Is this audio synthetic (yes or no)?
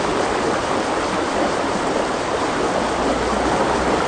no